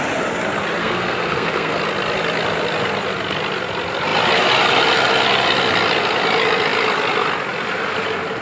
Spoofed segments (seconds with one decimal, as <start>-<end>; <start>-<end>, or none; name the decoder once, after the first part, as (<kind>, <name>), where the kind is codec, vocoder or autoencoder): 0.8-1.8 (codec, SNAC)

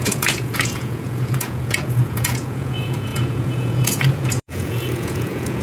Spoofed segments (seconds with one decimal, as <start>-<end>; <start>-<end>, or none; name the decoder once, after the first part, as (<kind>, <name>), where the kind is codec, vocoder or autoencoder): 0.0-5.6 (vocoder, Vocos)